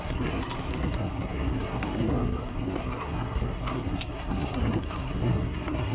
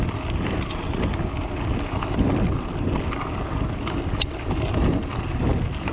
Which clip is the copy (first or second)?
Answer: first